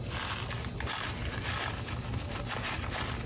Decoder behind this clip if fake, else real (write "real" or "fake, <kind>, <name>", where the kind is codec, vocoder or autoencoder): real